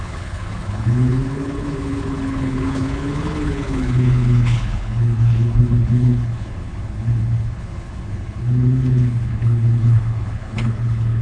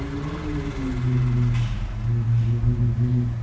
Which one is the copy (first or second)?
first